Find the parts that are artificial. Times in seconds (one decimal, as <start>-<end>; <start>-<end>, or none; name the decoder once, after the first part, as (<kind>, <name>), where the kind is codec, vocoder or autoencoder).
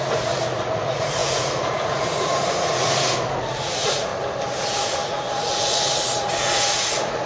0.0-4.1 (vocoder, Vocos); 4.6-7.3